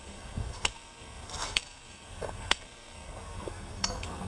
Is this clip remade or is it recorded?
remade